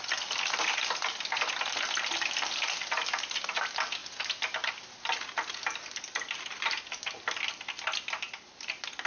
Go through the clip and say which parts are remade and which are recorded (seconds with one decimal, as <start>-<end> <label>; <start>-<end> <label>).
0.0-9.1 recorded

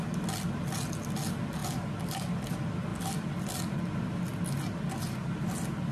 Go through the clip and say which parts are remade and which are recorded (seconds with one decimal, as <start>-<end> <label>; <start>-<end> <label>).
0.0-5.9 recorded

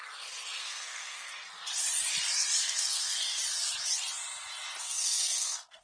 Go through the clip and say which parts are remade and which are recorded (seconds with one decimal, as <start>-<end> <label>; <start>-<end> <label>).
0.0-0.6 recorded; 0.6-1.4 remade; 1.4-2.6 recorded; 2.6-3.4 remade; 3.4-4.8 recorded; 4.8-5.8 remade

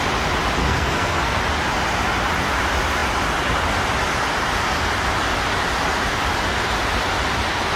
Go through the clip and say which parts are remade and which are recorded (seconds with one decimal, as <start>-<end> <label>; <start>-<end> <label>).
0.0-0.6 recorded; 0.6-1.4 remade; 1.4-7.8 recorded

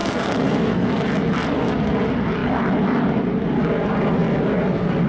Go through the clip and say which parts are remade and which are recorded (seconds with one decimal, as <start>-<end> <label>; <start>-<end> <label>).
0.0-1.0 remade; 1.0-5.1 recorded

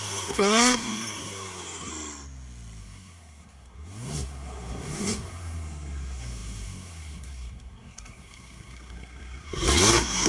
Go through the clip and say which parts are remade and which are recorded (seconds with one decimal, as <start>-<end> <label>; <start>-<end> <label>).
0.0-1.9 remade; 1.9-2.8 recorded; 2.8-10.3 remade

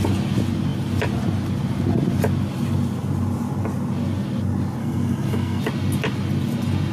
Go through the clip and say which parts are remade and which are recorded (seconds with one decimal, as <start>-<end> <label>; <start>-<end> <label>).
0.0-4.8 recorded; 4.8-5.6 remade; 5.6-6.9 recorded